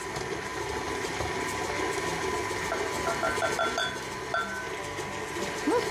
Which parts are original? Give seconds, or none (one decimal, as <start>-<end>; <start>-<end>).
0.0-5.9